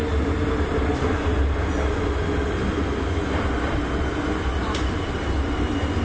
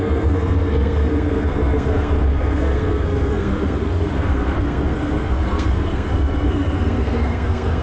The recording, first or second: first